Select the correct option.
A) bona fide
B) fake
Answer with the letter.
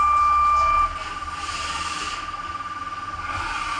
A